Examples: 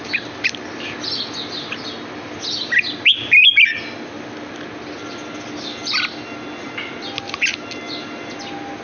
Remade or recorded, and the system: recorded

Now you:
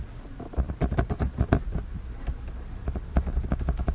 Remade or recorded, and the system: recorded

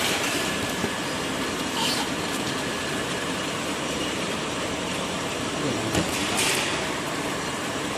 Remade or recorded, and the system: remade, vocoder, BigVGAN v2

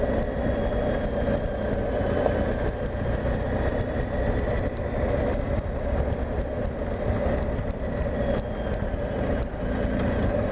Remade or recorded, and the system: recorded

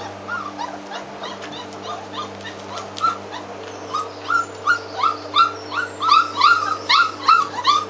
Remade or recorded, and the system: recorded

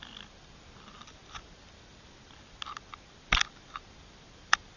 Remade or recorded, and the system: recorded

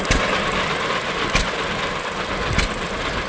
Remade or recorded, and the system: remade, vocoder, BigVGAN v2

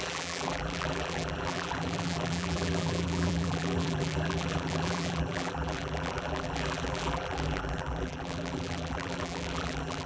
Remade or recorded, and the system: remade, vocoder, BigVGAN v2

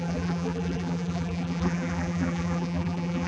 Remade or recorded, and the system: remade, vocoder, BigVGAN v2